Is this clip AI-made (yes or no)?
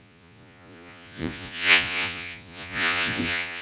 yes